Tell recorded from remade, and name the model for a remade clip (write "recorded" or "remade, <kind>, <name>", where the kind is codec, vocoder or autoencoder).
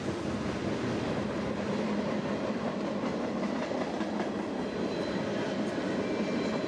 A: recorded